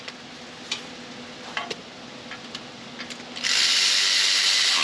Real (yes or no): yes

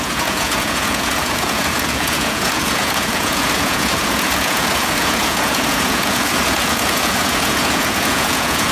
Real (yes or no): no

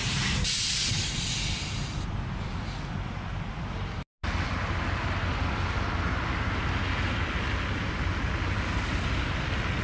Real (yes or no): yes